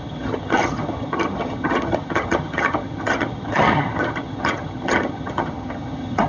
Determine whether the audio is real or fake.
fake